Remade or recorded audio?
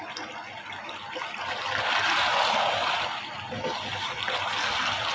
recorded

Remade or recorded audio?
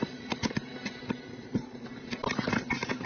remade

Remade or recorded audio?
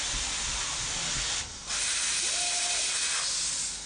recorded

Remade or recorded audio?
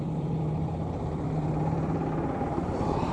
remade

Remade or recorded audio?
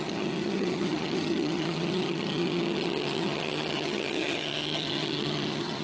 remade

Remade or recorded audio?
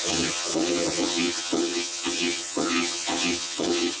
remade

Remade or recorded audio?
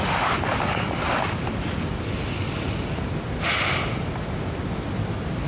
recorded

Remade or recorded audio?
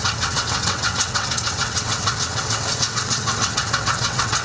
remade